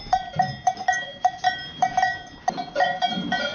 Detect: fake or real fake